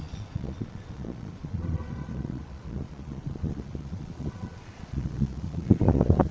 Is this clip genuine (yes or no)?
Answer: no